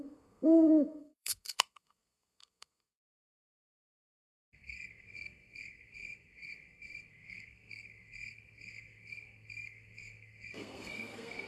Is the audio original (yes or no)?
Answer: no